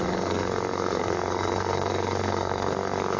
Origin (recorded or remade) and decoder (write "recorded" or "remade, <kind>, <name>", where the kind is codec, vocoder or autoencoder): remade, codec, SNAC